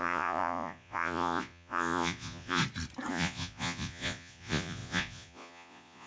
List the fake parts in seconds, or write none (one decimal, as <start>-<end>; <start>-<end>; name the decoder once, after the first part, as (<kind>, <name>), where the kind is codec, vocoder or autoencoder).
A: 0.0-2.6 (vocoder, Vocos); 3.1-6.1